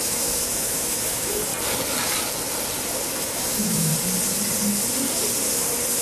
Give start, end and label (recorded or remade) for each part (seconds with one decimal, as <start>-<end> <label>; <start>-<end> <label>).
0.0-1.5 remade; 1.5-3.2 recorded; 3.2-3.9 remade; 3.9-6.0 recorded